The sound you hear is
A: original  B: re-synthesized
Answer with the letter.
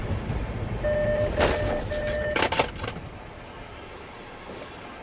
A